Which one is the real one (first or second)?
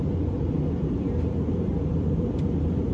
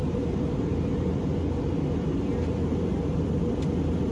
second